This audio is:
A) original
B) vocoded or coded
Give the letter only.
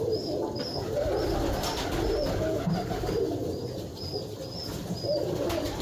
A